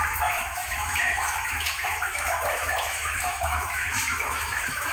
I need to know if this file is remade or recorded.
remade